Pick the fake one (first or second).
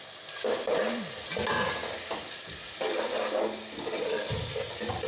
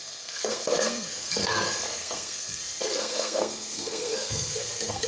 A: second